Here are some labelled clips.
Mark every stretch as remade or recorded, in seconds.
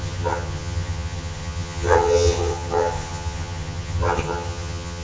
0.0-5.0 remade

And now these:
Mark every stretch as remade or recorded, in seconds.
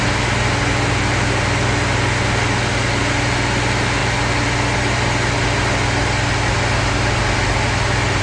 0.0-8.2 recorded